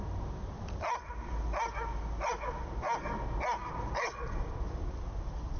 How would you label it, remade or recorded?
recorded